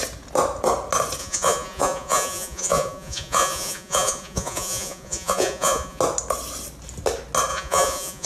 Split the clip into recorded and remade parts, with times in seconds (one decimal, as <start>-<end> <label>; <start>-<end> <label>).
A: 0.0-1.2 recorded; 1.2-6.0 remade; 6.0-7.5 recorded; 7.5-8.3 remade